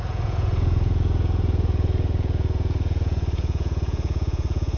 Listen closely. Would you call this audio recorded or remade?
remade